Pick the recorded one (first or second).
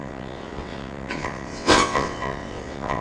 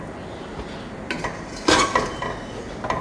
second